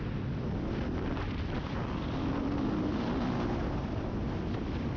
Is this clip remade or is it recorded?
recorded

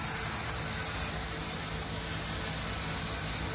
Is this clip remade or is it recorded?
recorded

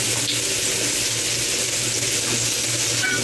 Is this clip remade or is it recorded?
recorded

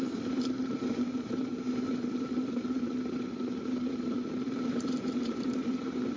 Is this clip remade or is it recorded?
remade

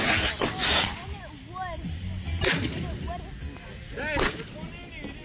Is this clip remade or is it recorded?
recorded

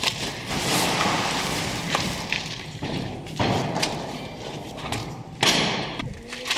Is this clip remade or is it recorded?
remade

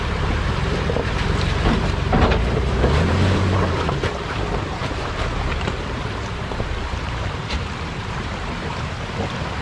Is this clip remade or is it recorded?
remade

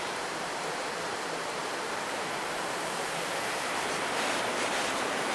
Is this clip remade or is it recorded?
remade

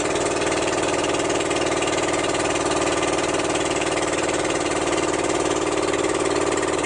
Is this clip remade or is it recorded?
remade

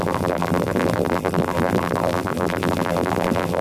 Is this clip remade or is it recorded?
remade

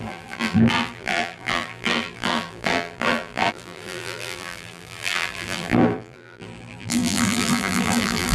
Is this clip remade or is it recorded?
remade